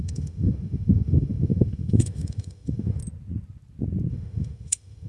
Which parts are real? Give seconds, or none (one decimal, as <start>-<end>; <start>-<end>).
3.0-4.1